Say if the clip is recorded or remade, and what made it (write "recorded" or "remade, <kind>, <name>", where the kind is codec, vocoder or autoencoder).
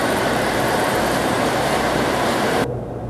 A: remade, vocoder, BigVGAN v2